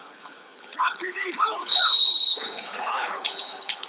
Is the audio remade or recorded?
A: remade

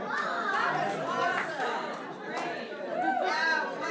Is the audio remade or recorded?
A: recorded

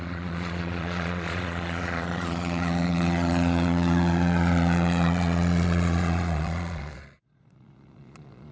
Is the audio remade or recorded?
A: remade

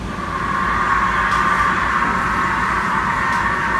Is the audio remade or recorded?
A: recorded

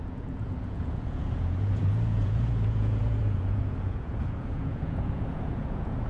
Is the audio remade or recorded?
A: remade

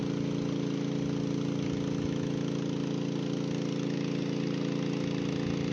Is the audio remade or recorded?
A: recorded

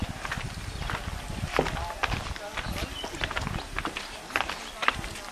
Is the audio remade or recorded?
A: recorded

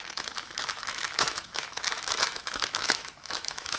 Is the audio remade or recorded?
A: remade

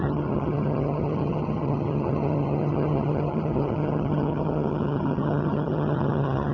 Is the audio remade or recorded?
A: remade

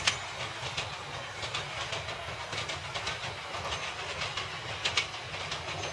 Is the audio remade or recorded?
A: recorded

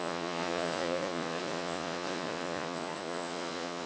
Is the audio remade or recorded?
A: remade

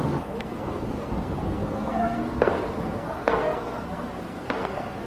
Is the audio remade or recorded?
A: remade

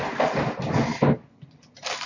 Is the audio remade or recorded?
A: recorded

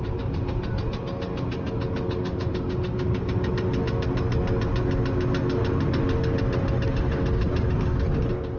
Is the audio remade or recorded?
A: recorded